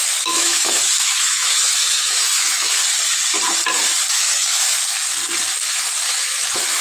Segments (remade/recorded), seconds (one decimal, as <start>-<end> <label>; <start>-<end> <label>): 0.0-2.8 remade; 2.8-4.1 recorded; 4.1-5.2 remade; 5.2-6.1 recorded; 6.1-6.8 remade